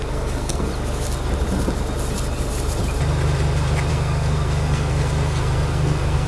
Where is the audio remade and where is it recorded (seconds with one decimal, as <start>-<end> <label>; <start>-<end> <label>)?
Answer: 0.0-0.7 remade; 0.7-3.9 recorded; 3.9-6.3 remade